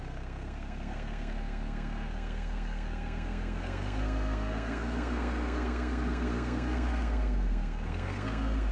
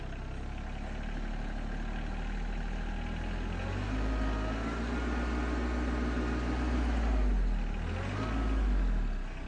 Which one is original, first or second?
second